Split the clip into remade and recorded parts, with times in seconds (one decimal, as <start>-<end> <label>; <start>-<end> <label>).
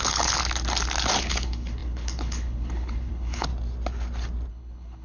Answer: 0.0-0.4 remade; 0.4-1.2 recorded; 1.2-3.5 remade; 3.5-4.5 recorded; 4.5-5.0 remade